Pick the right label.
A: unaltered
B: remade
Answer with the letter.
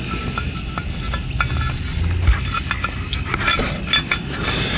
A